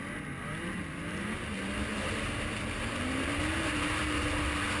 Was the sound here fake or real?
real